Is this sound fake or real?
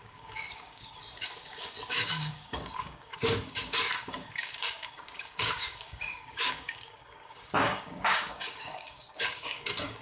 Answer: fake